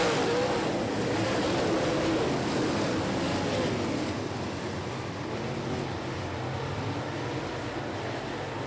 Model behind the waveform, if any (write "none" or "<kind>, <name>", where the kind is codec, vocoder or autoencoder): none